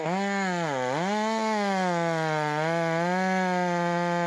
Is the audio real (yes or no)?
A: yes